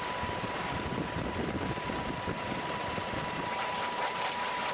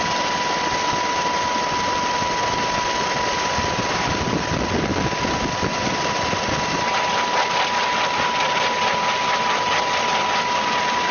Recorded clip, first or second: second